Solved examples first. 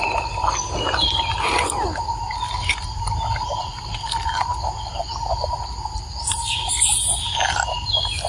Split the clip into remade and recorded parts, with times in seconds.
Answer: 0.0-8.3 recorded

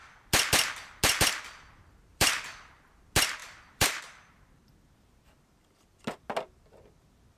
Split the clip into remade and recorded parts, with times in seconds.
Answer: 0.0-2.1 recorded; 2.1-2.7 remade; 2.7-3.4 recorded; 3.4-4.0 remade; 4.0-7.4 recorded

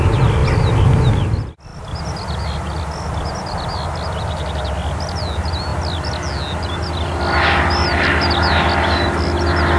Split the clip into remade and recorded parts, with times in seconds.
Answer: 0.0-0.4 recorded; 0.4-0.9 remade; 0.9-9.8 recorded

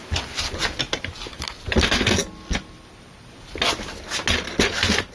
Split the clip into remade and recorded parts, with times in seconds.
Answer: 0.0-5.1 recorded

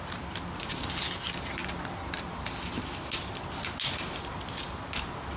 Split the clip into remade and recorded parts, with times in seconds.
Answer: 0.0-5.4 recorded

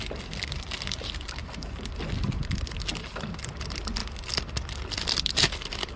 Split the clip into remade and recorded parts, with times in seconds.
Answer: 0.0-6.0 recorded

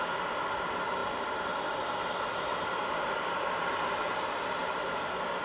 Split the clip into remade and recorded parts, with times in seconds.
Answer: 0.0-5.4 recorded

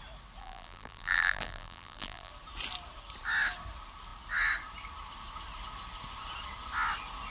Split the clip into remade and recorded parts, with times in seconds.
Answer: 0.0-0.4 recorded; 0.4-2.3 remade; 2.3-7.3 recorded